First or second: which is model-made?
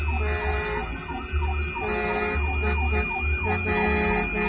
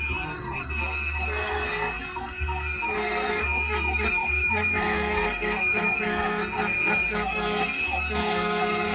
second